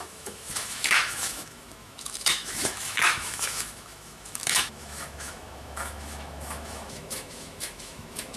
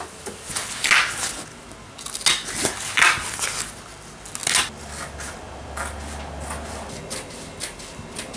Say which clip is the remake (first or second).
first